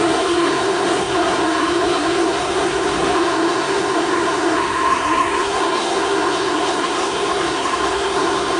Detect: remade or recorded remade